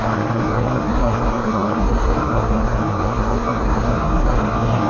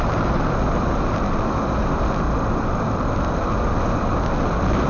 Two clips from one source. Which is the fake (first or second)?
first